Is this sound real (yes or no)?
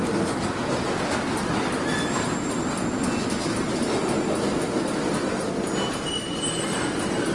yes